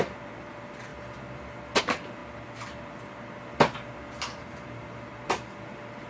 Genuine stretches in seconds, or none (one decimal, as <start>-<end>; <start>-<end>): 0.0-6.1